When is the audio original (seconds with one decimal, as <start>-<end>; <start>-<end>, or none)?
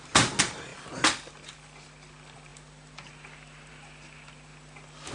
0.0-5.1